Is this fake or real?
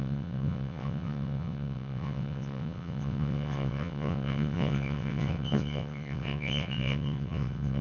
fake